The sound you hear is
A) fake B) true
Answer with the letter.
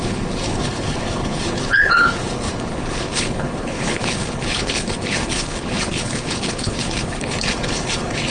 A